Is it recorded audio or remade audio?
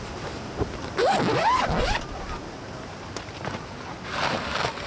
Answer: recorded